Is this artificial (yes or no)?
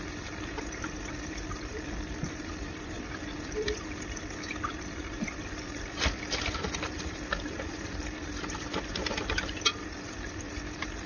yes